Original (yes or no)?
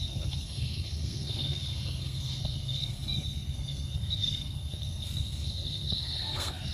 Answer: no